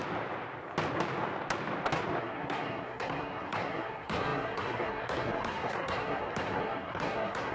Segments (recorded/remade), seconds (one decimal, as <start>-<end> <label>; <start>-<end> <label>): 0.0-2.2 recorded; 2.2-7.5 remade